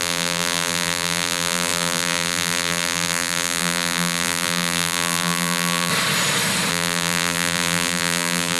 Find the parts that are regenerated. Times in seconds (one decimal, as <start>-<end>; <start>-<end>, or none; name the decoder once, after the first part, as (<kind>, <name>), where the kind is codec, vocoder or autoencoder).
0.0-5.9 (vocoder, BigVGAN v2); 6.7-8.6